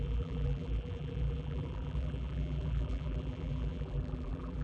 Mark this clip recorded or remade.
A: remade